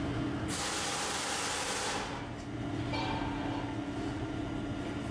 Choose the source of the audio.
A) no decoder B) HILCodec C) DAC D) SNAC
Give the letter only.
A